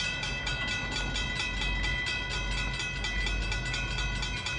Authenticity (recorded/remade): recorded